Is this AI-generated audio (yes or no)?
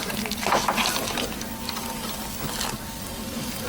yes